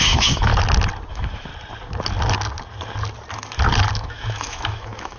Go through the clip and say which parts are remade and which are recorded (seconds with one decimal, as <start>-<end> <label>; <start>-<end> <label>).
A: 0.0-0.5 remade; 0.5-1.1 recorded; 1.1-1.5 remade; 1.5-3.9 recorded; 3.9-5.2 remade